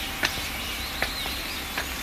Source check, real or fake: real